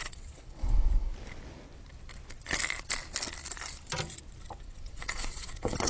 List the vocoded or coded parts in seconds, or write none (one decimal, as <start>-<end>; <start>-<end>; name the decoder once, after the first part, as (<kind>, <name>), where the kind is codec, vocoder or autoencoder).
0.0-1.1 (vocoder, WaveNeXt); 4.6-5.9